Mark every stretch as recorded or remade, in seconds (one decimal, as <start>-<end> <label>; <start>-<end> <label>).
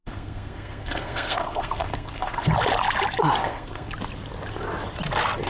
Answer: 0.0-2.5 remade; 2.5-3.4 recorded; 3.4-3.9 remade; 3.9-5.5 recorded